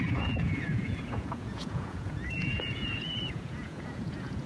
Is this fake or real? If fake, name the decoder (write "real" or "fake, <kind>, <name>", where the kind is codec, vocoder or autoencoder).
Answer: fake, vocoder, Vocos